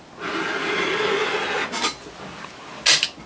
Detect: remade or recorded recorded